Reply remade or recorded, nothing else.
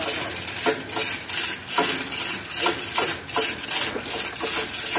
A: recorded